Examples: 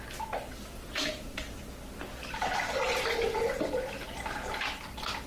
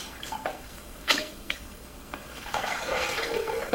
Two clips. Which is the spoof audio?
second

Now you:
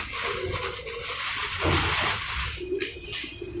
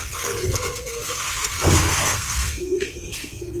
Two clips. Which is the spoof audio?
second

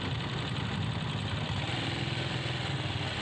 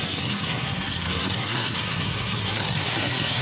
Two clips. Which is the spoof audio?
second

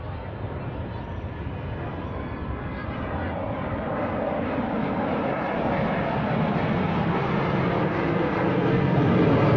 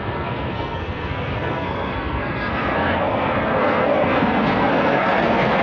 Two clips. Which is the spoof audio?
second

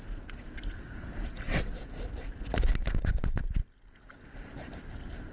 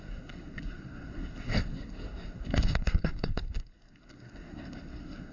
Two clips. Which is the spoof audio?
second